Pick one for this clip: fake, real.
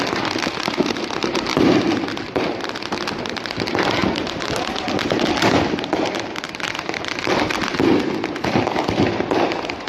fake